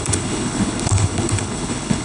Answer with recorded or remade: remade